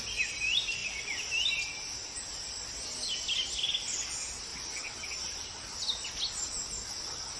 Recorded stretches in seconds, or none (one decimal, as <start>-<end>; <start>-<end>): 0.0-7.4